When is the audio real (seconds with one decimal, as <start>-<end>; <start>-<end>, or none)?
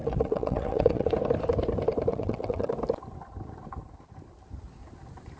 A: 1.1-2.1; 2.7-5.4